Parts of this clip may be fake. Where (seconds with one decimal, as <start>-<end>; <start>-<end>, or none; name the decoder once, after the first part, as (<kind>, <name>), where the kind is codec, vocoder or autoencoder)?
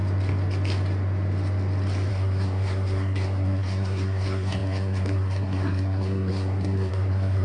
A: 2.1-7.4 (codec, SNAC)